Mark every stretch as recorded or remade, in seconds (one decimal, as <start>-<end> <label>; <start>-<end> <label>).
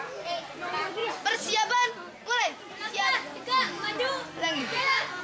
0.0-4.6 recorded; 4.6-5.2 remade